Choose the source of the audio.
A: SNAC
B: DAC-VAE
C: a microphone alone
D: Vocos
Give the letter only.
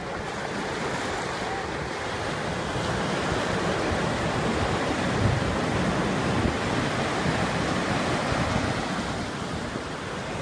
C